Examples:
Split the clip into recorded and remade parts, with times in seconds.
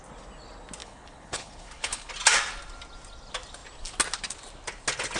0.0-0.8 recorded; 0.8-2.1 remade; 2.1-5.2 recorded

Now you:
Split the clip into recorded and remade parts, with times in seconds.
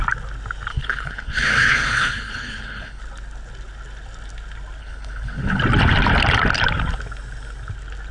0.0-0.7 recorded; 0.7-3.0 remade; 3.0-4.8 recorded; 4.8-5.6 remade; 5.6-8.1 recorded